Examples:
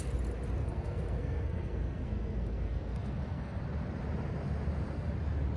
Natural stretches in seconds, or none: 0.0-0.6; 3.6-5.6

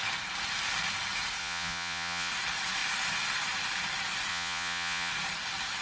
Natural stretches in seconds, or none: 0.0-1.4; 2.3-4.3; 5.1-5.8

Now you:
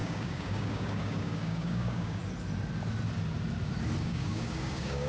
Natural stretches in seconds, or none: 2.2-4.0